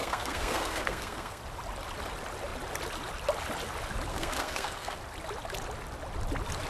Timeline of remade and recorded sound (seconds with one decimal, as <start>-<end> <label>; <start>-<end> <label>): 0.0-1.4 remade; 1.4-4.1 recorded; 4.1-5.0 remade; 5.0-6.7 recorded